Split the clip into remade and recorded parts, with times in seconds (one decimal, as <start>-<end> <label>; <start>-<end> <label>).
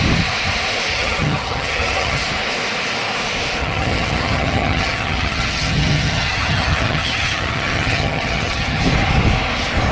0.0-0.9 recorded; 0.9-2.2 remade; 2.2-3.6 recorded; 3.6-8.8 remade; 8.8-9.9 recorded